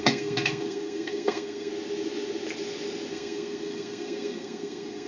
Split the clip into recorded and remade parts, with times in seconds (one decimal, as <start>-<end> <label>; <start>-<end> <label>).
0.0-1.7 remade; 1.7-3.1 recorded; 3.1-5.1 remade